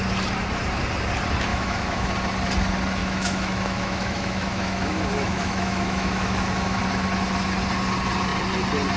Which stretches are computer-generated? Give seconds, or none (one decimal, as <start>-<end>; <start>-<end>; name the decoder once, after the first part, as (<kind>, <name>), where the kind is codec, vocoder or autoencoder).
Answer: 1.5-2.1 (autoencoder, DAC-VAE); 3.0-6.8